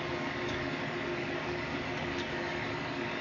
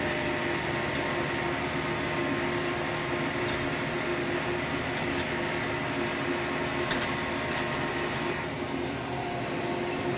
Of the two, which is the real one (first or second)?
second